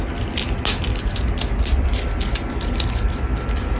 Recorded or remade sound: recorded